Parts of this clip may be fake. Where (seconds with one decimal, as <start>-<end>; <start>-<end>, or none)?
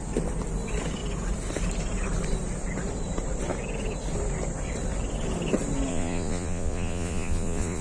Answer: 5.9-7.8